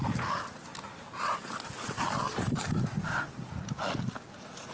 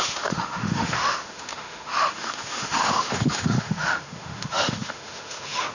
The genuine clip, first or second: first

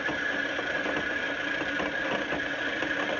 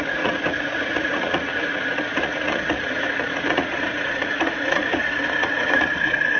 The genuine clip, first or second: first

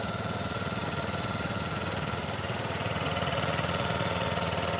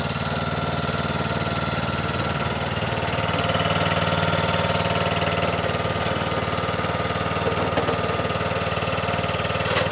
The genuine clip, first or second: second